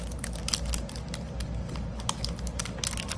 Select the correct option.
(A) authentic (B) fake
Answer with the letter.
A